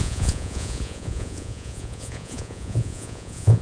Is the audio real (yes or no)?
no